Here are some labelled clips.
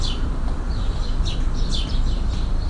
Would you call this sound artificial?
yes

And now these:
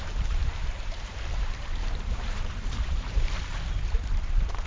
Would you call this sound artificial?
yes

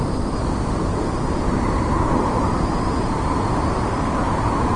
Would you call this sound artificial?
yes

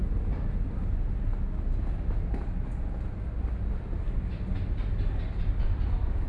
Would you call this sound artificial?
no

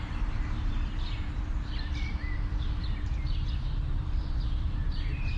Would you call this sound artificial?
yes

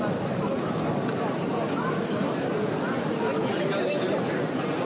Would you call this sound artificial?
no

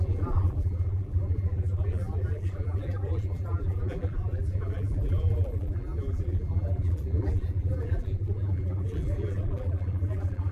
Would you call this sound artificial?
yes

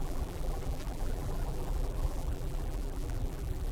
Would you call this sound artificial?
yes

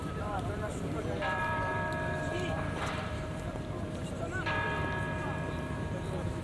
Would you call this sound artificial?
yes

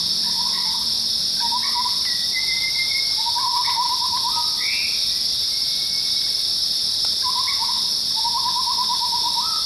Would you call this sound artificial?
no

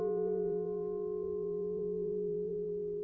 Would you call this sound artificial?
yes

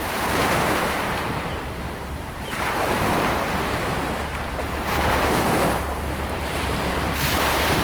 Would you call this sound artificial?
yes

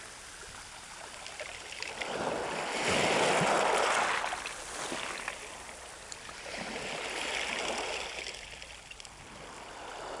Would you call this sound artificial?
no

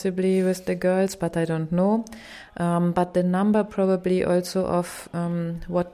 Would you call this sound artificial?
no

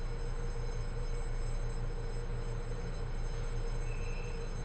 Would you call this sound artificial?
no